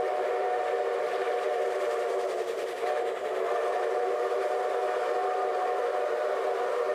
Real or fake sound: real